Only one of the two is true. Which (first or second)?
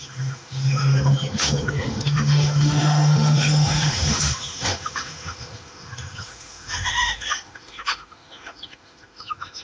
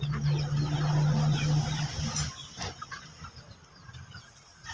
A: second